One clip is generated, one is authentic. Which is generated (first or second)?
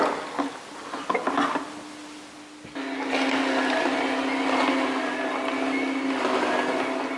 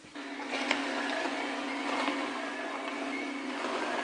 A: second